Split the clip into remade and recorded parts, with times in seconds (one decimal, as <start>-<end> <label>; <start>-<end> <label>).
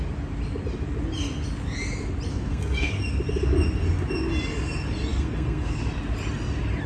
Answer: 0.0-2.3 recorded; 2.3-3.0 remade; 3.0-5.1 recorded; 5.1-5.8 remade; 5.8-6.9 recorded